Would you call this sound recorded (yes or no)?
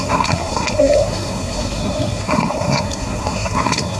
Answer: no